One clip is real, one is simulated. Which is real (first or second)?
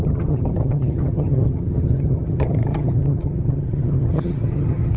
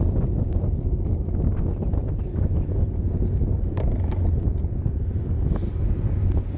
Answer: second